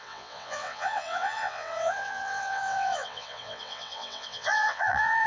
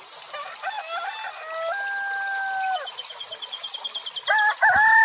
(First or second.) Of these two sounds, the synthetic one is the first